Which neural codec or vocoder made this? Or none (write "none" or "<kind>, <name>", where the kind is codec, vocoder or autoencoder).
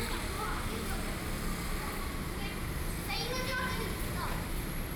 none